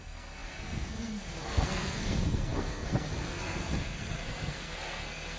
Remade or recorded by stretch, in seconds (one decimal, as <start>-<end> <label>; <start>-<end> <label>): 0.0-5.4 remade